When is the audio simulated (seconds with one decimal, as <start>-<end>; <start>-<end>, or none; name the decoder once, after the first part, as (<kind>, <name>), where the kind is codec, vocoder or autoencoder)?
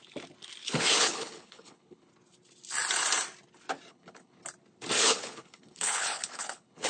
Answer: 0.6-2.1 (codec, HILCodec); 3.9-4.4; 5.0-6.9